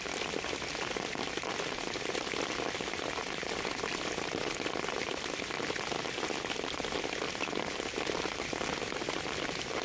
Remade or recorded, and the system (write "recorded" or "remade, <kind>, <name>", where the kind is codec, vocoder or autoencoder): recorded